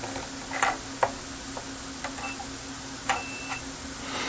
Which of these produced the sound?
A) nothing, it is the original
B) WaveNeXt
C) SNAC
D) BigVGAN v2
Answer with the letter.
A